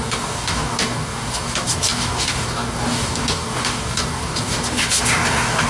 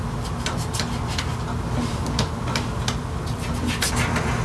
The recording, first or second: second